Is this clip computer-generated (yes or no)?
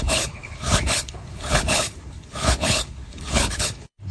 yes